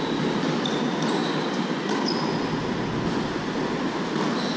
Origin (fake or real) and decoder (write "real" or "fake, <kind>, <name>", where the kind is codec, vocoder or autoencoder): real